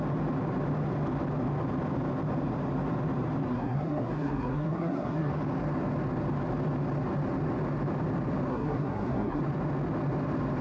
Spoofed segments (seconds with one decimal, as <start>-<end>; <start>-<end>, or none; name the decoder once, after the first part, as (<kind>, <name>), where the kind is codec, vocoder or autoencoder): 3.5-5.3 (codec, SNAC); 8.5-9.4